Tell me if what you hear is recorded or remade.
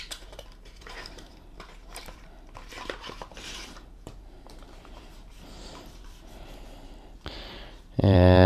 remade